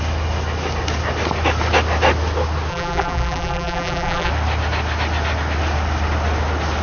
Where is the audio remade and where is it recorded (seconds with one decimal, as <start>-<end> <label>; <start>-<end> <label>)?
0.0-2.7 recorded; 2.7-4.3 remade; 4.3-6.8 recorded